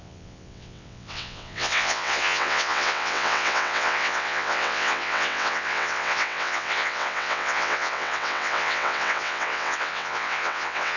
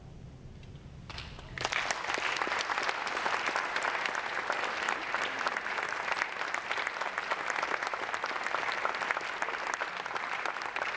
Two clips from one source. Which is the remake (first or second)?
first